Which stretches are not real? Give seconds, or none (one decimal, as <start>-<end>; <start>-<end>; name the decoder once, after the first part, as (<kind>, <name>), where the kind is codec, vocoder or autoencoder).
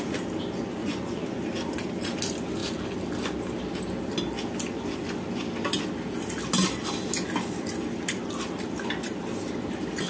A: 0.8-1.4 (vocoder, Vocos)